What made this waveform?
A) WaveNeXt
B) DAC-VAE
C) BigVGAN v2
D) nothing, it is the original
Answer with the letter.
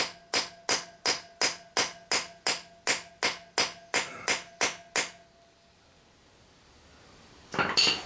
D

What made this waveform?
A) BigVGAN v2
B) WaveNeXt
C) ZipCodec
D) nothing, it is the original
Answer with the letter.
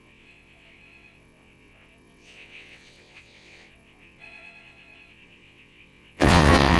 B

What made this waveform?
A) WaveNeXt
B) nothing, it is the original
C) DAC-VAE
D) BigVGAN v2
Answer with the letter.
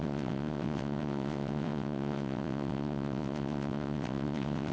A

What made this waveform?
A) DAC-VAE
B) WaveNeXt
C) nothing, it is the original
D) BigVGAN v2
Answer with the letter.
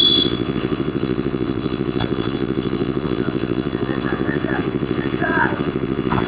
B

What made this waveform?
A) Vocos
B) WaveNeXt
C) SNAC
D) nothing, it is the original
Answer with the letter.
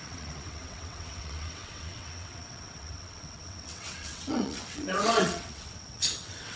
B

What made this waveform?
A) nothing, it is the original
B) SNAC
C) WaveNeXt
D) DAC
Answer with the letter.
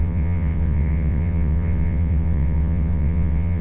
C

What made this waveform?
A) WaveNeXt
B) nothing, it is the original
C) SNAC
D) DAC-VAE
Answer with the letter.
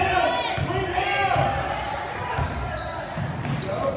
B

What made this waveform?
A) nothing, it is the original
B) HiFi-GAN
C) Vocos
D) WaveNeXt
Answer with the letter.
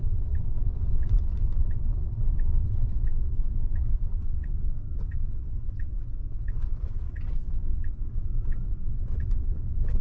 D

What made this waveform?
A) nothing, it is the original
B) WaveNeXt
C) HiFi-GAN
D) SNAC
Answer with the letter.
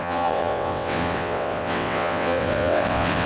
B